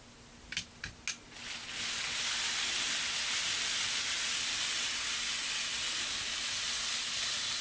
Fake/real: real